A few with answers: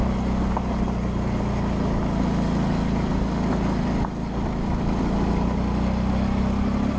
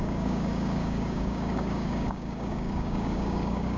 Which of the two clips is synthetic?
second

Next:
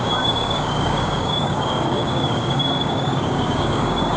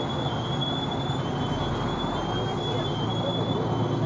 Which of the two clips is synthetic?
first